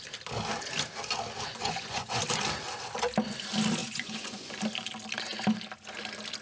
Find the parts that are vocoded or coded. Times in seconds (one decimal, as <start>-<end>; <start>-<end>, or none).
1.5-2.2; 3.8-4.5